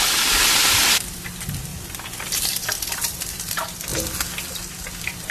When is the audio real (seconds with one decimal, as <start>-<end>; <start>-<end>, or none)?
3.9-4.5